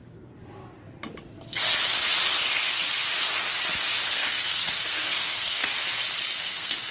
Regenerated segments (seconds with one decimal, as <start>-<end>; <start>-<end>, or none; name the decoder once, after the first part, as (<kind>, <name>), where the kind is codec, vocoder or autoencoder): 4.1-5.7 (codec, SNAC); 6.4-6.9